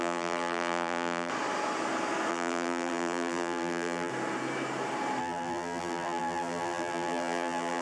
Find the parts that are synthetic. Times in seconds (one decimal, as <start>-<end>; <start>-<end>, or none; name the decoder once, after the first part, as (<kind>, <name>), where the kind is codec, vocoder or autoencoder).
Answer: 0.0-1.3 (vocoder, BigVGAN v2); 2.3-4.1; 5.2-7.8